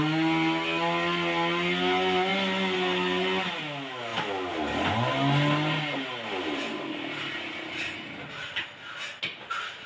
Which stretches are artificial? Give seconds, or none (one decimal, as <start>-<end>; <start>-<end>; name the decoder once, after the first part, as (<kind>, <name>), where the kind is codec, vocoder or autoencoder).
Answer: none